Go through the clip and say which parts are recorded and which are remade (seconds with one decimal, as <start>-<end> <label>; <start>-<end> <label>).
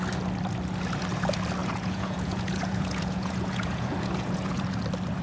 0.0-1.6 recorded; 1.6-4.7 remade; 4.7-5.2 recorded